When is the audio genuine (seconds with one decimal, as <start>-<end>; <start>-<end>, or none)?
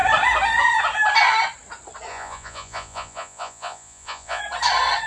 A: 0.0-2.1; 4.4-5.1